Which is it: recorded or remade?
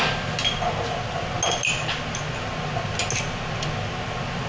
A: recorded